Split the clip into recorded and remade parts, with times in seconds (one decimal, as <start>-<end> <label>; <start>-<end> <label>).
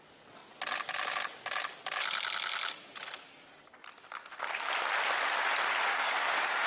0.0-5.9 recorded; 5.9-6.7 remade